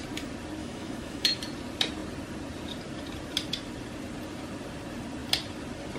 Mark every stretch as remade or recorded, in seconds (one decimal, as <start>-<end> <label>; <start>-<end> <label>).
0.0-0.6 recorded; 0.6-1.4 remade; 1.4-6.0 recorded